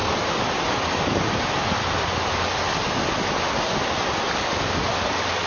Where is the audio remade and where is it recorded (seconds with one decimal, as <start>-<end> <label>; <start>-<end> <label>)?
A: 0.0-5.5 recorded